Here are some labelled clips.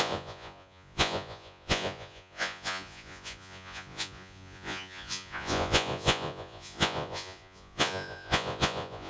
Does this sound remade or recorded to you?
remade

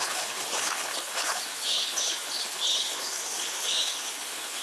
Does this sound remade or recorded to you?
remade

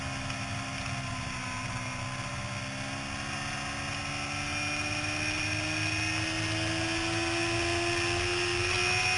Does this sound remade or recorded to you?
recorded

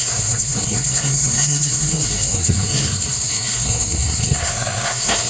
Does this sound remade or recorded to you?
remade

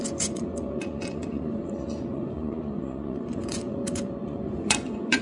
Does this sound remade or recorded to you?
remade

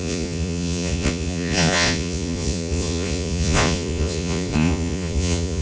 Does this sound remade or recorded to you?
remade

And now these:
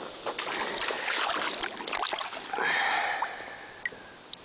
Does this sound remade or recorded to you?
recorded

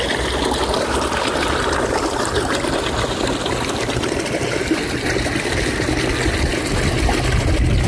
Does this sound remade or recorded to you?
recorded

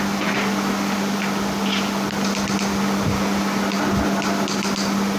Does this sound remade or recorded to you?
recorded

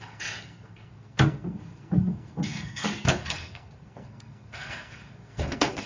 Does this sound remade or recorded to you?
remade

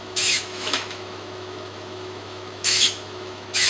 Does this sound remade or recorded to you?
remade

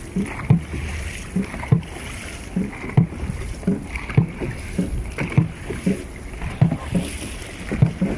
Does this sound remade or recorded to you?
recorded